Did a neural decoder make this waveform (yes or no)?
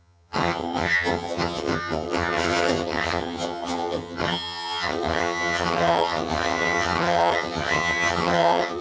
yes